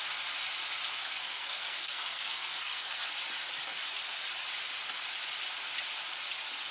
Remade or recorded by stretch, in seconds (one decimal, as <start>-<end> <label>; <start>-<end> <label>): 0.0-0.9 recorded; 0.9-3.1 remade; 3.1-6.7 recorded